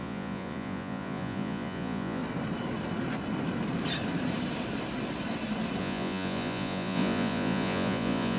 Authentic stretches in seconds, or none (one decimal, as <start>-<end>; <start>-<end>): 2.2-5.8